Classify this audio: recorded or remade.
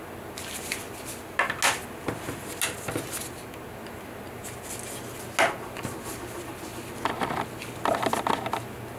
recorded